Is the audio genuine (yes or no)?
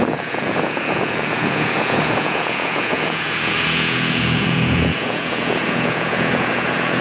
no